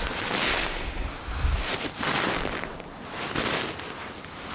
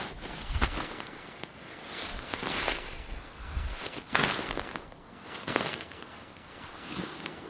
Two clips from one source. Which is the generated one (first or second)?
second